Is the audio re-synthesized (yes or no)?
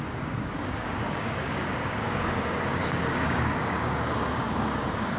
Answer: yes